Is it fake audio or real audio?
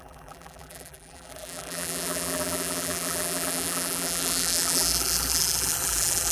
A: fake